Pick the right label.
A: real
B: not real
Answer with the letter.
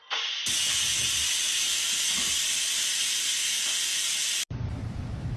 A